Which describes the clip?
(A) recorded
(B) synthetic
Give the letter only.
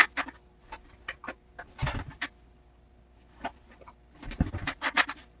A